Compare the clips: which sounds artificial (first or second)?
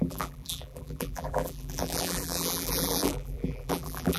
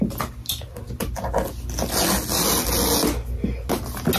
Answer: first